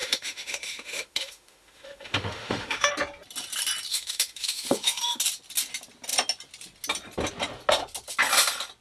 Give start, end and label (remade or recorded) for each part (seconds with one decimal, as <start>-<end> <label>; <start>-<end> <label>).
0.0-2.9 remade; 2.9-3.9 recorded; 3.9-5.2 remade; 5.2-8.8 recorded